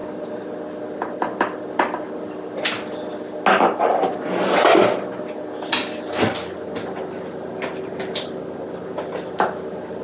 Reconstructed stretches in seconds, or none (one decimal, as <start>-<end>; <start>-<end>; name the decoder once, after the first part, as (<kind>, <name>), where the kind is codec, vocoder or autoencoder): none